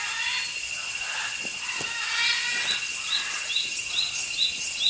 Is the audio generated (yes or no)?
no